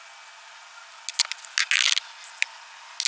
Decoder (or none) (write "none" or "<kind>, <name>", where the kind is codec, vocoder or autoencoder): none